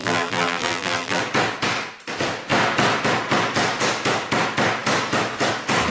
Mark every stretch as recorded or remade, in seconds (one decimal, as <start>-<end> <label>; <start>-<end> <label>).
0.0-1.2 remade; 1.2-5.9 recorded